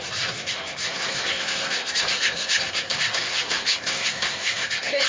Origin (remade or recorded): remade